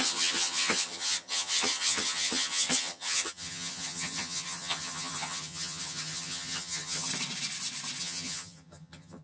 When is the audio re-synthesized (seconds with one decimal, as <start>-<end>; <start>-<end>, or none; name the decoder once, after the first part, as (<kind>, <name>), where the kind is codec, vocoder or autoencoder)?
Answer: 0.0-7.1 (vocoder, HiFi-GAN); 8.0-9.2